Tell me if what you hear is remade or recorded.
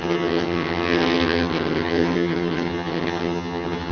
remade